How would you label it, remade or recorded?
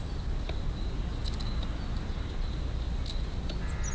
recorded